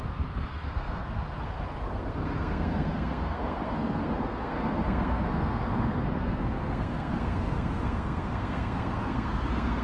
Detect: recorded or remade remade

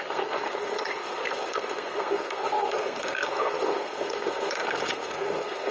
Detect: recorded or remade remade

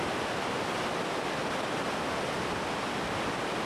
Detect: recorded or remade recorded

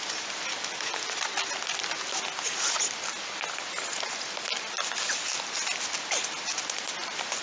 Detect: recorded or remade recorded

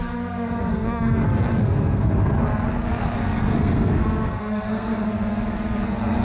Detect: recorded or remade remade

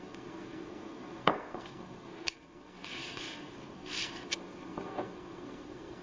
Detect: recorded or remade remade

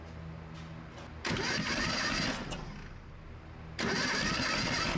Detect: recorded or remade recorded